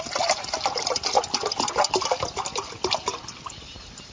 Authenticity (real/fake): real